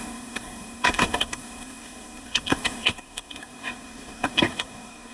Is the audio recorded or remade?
remade